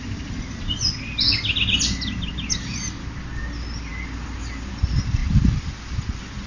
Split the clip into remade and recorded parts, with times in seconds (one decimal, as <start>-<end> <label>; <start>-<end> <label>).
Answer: 0.0-6.5 recorded